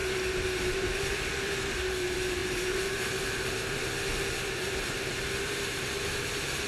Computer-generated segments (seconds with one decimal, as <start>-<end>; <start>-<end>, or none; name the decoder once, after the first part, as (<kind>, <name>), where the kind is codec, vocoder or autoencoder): 0.0-6.7 (vocoder, BigVGAN v2)